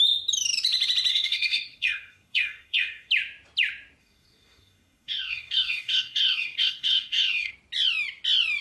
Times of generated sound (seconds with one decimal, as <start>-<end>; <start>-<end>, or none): 1.1-3.1; 4.0-7.5